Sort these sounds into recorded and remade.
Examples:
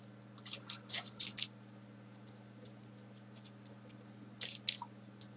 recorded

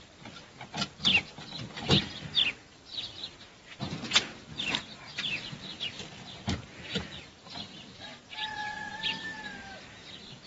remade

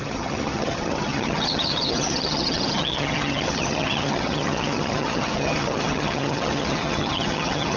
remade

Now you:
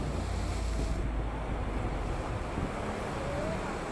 recorded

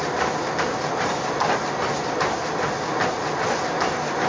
recorded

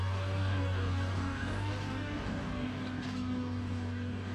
remade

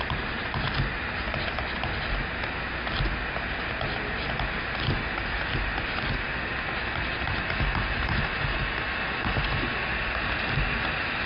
recorded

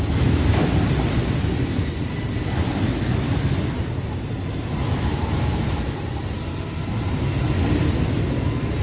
recorded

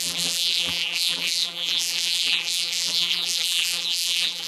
remade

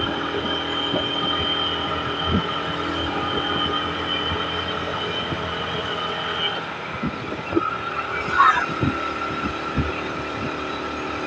recorded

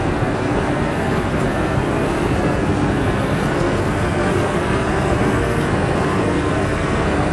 remade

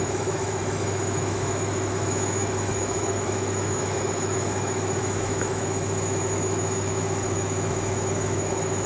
remade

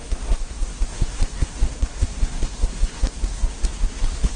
remade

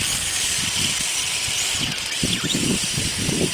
remade